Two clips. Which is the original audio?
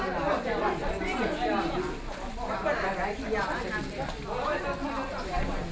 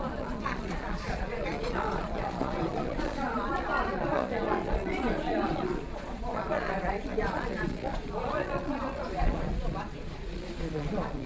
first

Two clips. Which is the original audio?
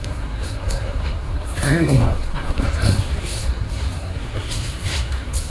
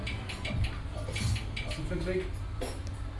second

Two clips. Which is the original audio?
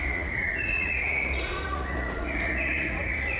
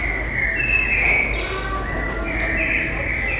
second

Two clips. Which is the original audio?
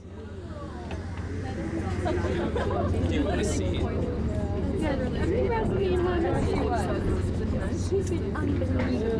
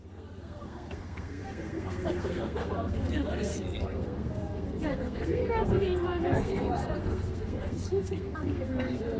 first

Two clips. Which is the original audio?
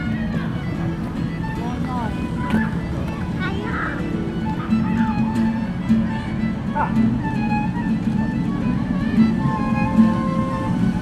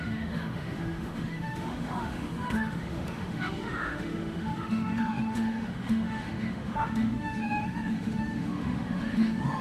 first